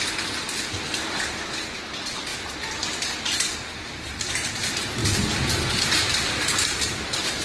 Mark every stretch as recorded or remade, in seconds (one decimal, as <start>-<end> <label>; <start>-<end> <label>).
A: 0.0-2.3 remade; 2.3-3.7 recorded; 3.7-5.0 remade; 5.0-6.5 recorded; 6.5-7.4 remade